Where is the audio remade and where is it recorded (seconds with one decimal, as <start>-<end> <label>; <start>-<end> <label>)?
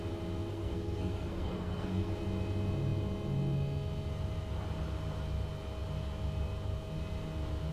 0.0-0.5 recorded; 0.5-2.1 remade; 2.1-7.7 recorded